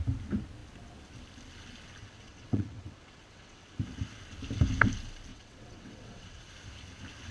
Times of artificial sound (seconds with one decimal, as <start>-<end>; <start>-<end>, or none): 2.0-3.8; 5.3-6.4